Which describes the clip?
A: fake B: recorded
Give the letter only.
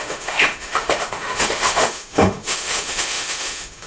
A